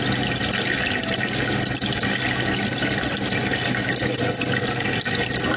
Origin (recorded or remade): recorded